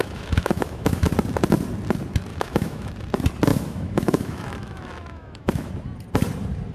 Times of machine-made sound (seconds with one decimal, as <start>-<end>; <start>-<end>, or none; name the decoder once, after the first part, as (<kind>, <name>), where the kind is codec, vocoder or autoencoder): 0.0-1.1 (autoencoder, DAC-VAE); 2.3-2.9; 3.5-5.7